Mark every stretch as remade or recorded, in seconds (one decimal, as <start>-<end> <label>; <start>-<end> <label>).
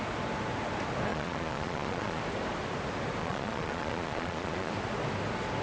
0.0-1.1 recorded; 1.1-2.2 remade; 2.2-3.2 recorded; 3.2-4.7 remade; 4.7-5.6 recorded